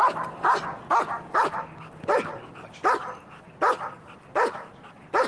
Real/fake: real